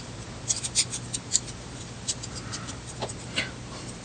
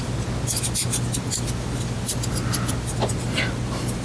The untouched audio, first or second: second